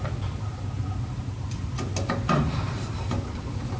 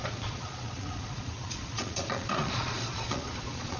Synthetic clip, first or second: second